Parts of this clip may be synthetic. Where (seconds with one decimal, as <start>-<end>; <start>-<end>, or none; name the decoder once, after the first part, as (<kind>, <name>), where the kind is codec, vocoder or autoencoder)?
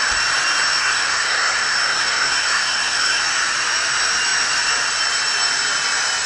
0.8-3.2 (codec, SNAC)